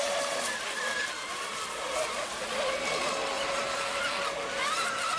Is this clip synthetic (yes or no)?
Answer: no